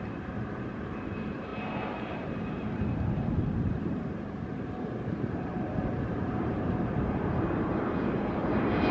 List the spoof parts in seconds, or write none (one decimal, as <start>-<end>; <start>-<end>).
0.0-8.9